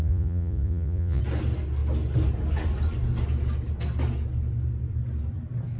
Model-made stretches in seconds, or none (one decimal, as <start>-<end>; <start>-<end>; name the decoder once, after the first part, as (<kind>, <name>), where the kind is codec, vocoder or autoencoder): 0.0-1.2 (vocoder, Vocos)